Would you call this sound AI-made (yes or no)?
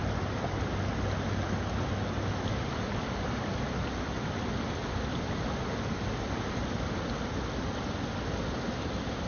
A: no